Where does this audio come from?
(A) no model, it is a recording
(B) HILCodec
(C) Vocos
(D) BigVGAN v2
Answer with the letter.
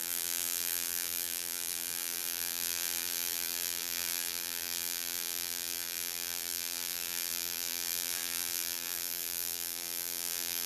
D